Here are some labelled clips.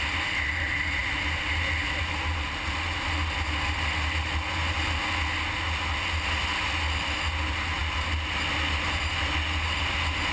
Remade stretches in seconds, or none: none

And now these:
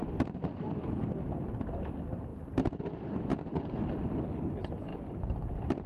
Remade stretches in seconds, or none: 0.0-0.5 (vocoder, BigVGAN v2); 2.3-2.8; 3.3-4.3; 4.9-5.9

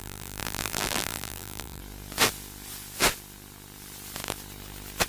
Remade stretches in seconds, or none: 0.0-1.8 (vocoder, BigVGAN v2)

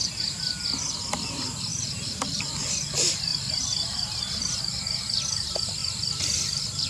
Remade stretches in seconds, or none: 1.7-2.4 (vocoder, BigVGAN v2); 3.3-4.2

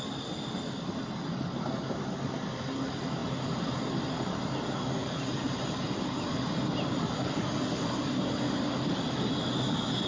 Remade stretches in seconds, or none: 5.0-6.0 (vocoder, BigVGAN v2)

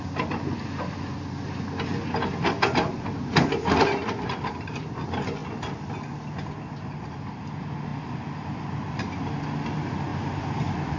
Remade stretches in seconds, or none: none

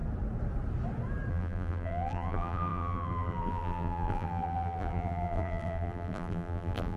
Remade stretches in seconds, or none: 1.3-7.0 (vocoder, BigVGAN v2)

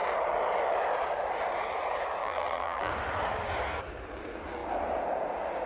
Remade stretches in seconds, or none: 2.2-2.9 (vocoder, BigVGAN v2)